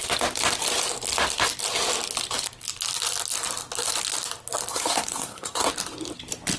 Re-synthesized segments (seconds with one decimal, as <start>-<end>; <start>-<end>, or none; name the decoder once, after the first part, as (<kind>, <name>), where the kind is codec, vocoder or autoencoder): 4.7-5.7 (codec, SNAC)